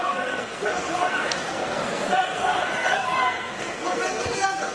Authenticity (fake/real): fake